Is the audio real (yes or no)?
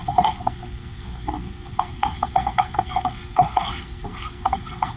no